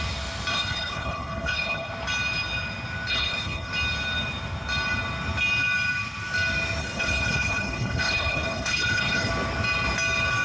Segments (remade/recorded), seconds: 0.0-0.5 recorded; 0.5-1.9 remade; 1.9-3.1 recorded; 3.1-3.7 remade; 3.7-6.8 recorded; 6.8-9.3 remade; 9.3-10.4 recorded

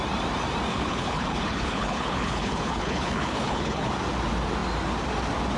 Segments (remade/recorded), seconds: 0.0-0.7 recorded; 0.7-3.9 remade; 3.9-5.6 recorded

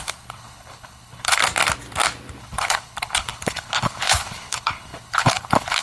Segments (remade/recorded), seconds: 0.0-1.4 remade; 1.4-2.4 recorded; 2.4-5.8 remade

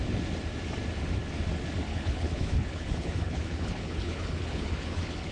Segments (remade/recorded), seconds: 0.0-1.9 recorded; 1.9-5.3 remade

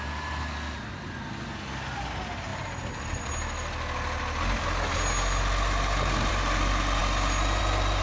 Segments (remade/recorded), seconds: 0.0-8.0 recorded